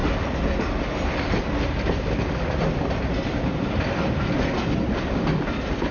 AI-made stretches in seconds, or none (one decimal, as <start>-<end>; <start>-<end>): none